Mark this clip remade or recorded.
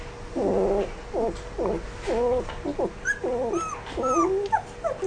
recorded